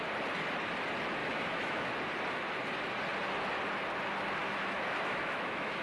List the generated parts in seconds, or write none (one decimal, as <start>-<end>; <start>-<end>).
1.2-1.9; 4.4-5.8